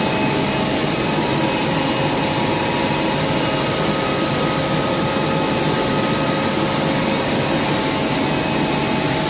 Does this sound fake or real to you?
real